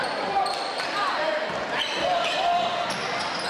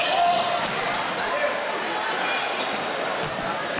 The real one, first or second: first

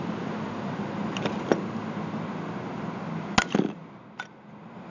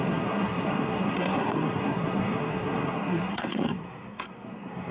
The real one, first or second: first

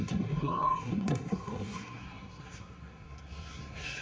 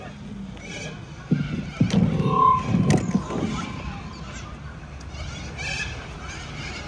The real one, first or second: second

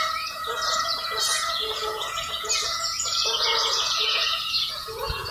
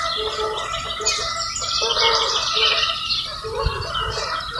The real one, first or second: second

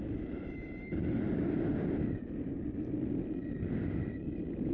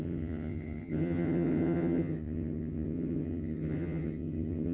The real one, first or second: first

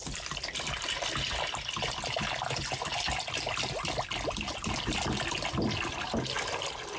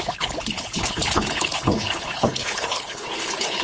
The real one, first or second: first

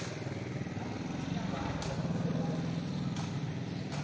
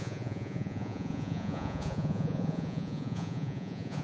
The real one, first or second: first